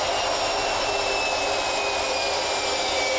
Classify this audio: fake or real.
real